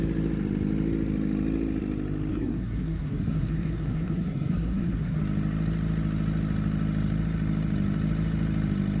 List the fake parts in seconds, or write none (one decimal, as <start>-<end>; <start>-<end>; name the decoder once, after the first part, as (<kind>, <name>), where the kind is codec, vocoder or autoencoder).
2.3-5.2 (codec, SNAC)